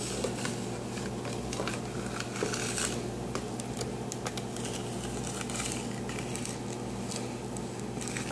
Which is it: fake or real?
real